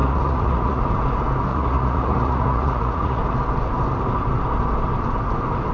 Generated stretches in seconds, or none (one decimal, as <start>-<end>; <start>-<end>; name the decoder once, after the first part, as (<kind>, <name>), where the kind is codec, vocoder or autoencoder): 0.0-0.8 (vocoder, Vocos); 1.5-3.2